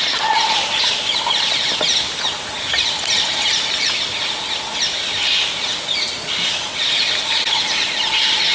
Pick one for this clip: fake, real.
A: real